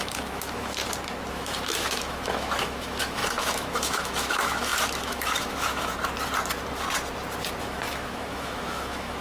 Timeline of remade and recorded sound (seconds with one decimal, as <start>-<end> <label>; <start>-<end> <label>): 0.0-0.8 remade; 0.8-1.3 recorded; 1.3-5.9 remade; 5.9-7.6 recorded; 7.6-9.2 remade